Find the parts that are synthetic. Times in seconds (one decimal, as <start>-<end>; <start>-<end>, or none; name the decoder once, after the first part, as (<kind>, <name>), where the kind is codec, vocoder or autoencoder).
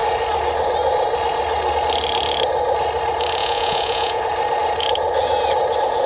3.4-4.2 (vocoder, Vocos)